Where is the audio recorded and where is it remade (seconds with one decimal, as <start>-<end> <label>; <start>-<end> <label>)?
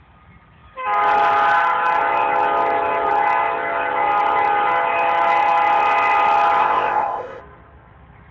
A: 0.0-6.6 recorded; 6.6-7.4 remade; 7.4-8.3 recorded